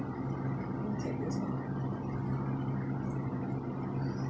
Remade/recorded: recorded